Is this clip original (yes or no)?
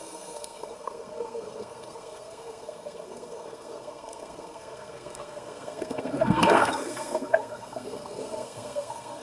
no